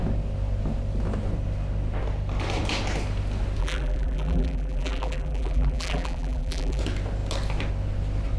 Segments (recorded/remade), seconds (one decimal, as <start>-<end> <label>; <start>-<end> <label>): 0.0-3.6 recorded; 3.6-6.8 remade; 6.8-8.4 recorded